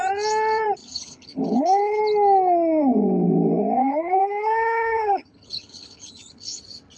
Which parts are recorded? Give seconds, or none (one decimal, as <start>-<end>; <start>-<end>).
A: 0.0-0.8; 2.0-3.8; 6.6-7.0